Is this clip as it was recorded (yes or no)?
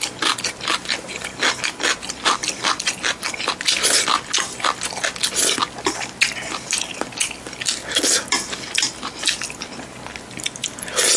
yes